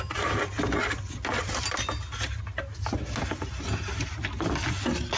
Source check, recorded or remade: recorded